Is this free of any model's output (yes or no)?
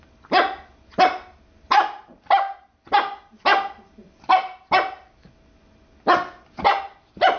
yes